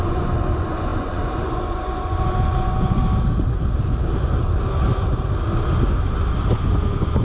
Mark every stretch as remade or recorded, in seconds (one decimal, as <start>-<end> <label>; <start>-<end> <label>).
0.0-3.0 remade; 3.0-6.5 recorded; 6.5-7.2 remade